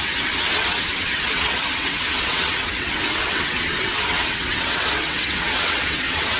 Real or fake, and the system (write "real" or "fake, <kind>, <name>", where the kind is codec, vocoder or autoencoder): fake, vocoder, WaveNeXt